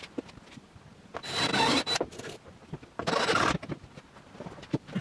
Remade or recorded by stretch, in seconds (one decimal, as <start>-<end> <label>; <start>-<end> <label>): 0.0-5.0 recorded